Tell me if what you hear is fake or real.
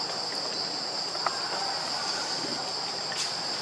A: real